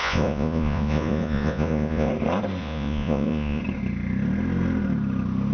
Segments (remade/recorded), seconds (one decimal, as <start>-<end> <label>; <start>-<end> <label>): 0.0-2.1 remade; 2.1-2.6 recorded; 2.6-3.6 remade; 3.6-5.5 recorded